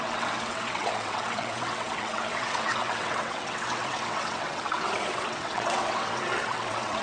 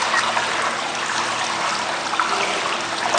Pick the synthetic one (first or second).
first